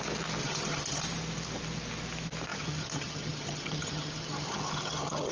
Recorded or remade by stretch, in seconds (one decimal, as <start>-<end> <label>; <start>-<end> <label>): 0.0-0.4 recorded; 0.4-1.0 remade; 1.0-2.5 recorded; 2.5-5.3 remade